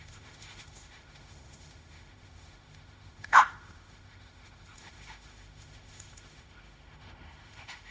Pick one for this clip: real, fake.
fake